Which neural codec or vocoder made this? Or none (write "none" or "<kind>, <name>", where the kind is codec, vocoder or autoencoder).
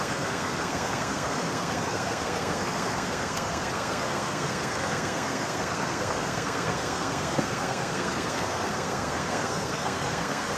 codec, SNAC